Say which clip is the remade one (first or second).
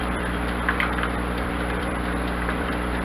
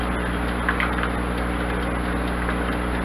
first